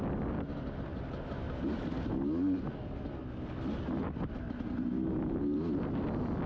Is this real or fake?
real